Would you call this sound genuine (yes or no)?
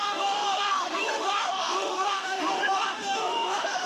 no